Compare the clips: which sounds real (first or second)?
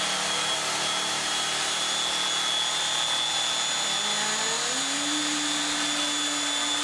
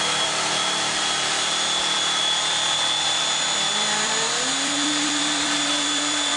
first